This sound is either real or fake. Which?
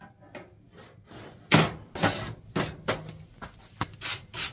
real